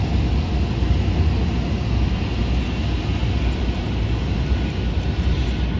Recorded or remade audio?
recorded